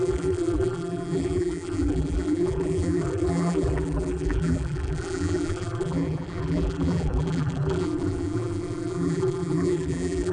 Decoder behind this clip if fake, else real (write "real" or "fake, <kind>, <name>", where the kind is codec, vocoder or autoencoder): fake, vocoder, BigVGAN v2